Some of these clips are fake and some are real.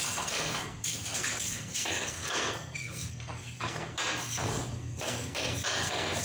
fake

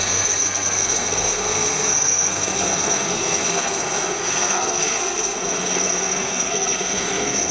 fake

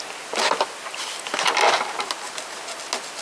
real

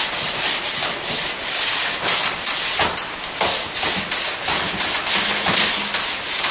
real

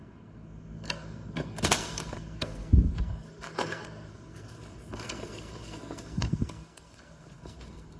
fake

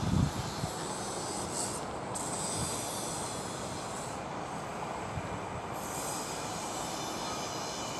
real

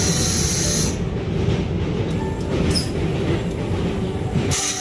real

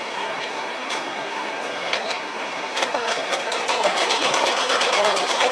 fake